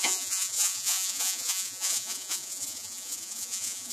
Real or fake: fake